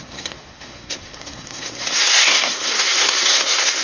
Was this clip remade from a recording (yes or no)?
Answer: yes